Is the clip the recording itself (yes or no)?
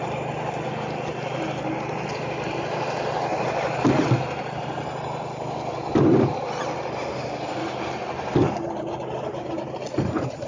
yes